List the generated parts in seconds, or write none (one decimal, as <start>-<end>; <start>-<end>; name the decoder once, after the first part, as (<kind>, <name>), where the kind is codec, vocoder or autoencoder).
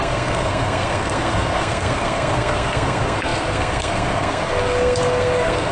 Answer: 0.0-5.7 (codec, SNAC)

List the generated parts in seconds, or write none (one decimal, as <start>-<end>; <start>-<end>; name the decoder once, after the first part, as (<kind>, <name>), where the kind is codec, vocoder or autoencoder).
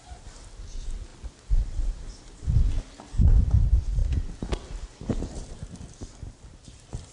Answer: none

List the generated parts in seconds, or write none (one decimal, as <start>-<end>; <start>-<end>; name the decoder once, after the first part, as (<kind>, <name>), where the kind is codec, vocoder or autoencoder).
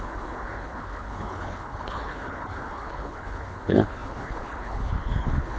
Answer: 0.0-5.6 (codec, HILCodec)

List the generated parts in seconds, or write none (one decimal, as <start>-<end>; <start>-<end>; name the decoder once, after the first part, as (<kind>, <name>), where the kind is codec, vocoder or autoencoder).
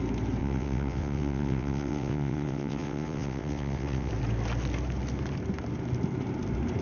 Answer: 0.4-4.1 (vocoder, WaveNeXt)